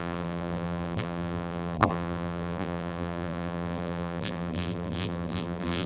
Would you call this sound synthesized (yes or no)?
yes